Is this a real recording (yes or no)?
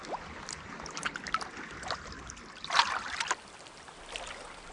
yes